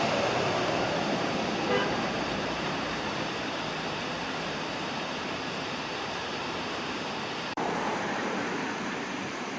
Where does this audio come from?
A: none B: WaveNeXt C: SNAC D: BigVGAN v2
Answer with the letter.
D